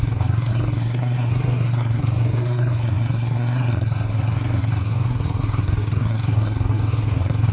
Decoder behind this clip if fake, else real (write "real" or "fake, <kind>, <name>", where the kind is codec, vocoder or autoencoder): fake, codec, SNAC